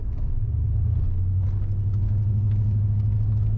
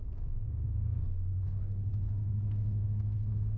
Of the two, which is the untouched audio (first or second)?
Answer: first